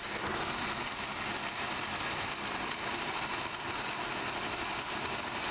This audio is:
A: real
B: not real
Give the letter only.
A